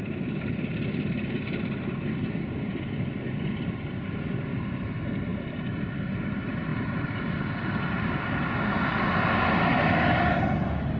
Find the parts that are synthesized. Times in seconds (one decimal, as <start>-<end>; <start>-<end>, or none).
none